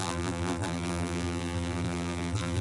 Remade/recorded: remade